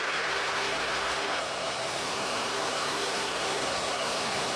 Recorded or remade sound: remade